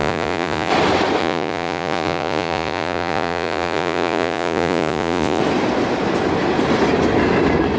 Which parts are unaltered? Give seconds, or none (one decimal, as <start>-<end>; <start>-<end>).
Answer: 0.7-1.2; 5.4-7.8